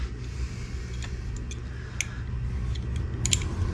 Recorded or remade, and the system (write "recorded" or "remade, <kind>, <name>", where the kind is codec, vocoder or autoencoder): recorded